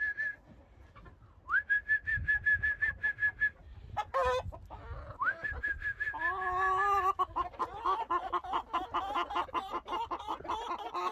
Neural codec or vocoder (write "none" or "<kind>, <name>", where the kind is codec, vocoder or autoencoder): none